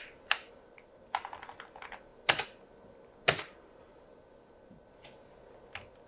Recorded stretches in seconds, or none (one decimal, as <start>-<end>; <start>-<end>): 0.0-6.1